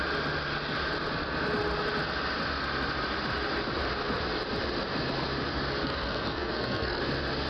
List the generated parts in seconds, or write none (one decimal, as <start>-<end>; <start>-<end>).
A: 5.8-7.0